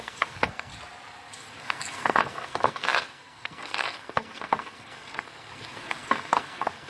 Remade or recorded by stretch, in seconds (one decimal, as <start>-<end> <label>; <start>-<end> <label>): 0.0-0.7 remade; 0.7-1.3 recorded; 1.3-6.9 remade